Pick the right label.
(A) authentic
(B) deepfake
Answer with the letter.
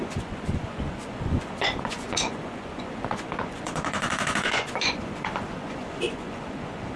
B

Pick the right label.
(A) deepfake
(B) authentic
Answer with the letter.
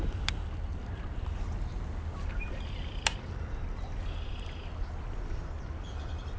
B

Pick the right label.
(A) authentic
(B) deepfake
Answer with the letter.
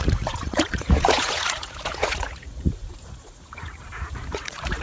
B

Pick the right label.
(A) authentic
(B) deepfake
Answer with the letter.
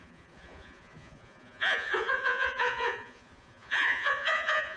B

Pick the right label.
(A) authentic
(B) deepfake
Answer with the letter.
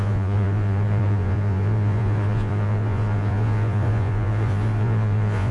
B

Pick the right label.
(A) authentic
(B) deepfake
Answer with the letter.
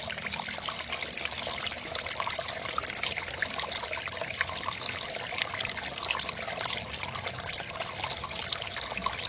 A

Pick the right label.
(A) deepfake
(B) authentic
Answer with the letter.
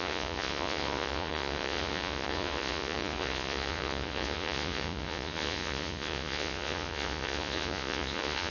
A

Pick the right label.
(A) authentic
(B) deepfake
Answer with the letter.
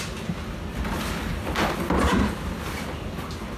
A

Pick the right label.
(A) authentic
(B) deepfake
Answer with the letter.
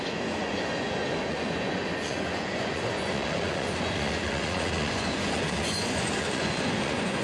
B